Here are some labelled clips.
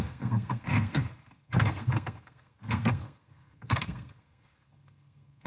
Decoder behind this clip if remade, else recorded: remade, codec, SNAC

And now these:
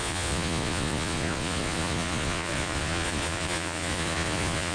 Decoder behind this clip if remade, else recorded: remade, vocoder, Vocos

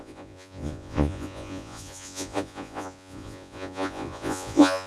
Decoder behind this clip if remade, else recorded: remade, vocoder, Vocos